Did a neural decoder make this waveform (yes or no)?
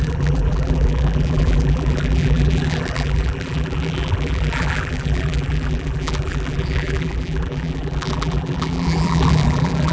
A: yes